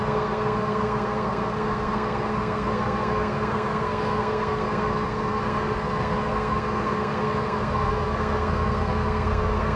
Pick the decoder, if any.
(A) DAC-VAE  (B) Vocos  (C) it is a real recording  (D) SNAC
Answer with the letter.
D